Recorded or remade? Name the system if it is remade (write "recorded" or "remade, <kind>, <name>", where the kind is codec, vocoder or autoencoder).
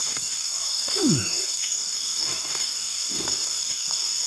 remade, codec, DAC